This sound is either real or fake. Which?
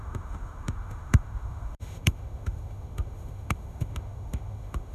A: fake